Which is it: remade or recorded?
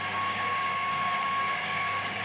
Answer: remade